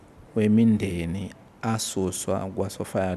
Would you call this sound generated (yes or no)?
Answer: no